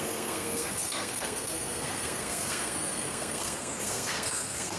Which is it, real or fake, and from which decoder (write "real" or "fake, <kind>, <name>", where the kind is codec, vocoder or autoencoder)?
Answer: fake, codec, SNAC